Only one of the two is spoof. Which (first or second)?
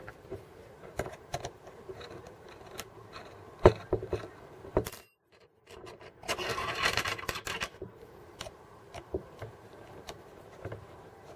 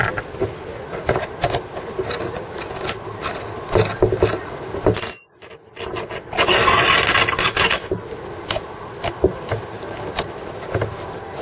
first